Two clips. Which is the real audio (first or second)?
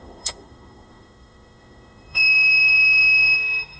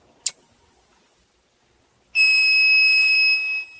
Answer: second